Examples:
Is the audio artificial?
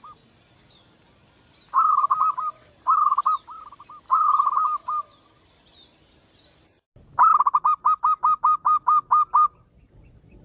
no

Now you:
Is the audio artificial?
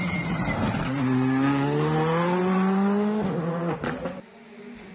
no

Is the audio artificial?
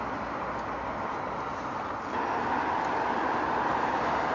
no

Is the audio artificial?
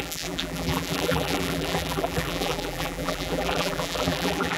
yes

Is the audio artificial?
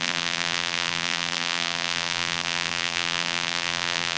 yes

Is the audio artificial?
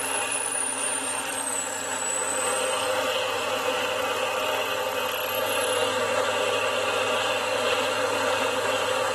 no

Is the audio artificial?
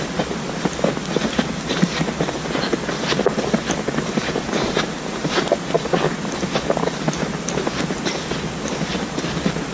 no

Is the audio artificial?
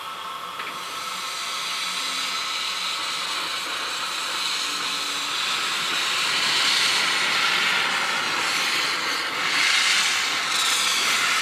no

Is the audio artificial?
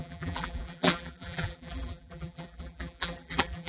yes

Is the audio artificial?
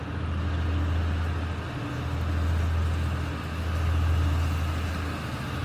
no